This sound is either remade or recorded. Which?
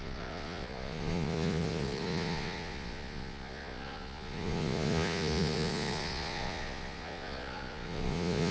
remade